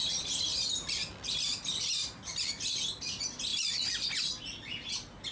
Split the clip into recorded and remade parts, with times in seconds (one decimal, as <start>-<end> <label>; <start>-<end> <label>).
0.0-0.5 recorded; 0.5-2.7 remade; 2.7-3.5 recorded; 3.5-4.3 remade; 4.3-5.3 recorded